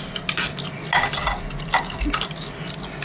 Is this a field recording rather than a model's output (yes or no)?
yes